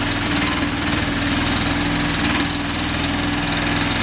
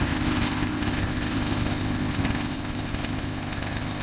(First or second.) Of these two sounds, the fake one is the second